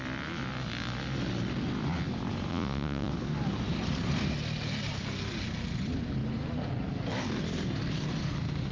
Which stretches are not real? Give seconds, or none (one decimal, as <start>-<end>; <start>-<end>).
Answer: 2.5-3.1